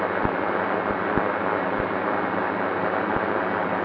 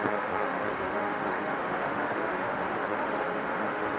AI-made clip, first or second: second